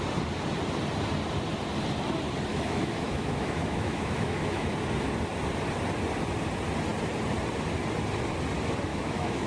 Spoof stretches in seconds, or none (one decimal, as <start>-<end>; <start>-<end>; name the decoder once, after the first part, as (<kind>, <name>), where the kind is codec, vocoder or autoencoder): 2.5-4.7 (autoencoder, DAC-VAE); 8.9-9.5